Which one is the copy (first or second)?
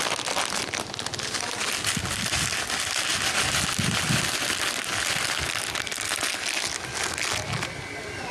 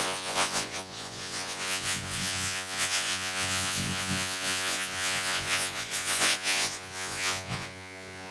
second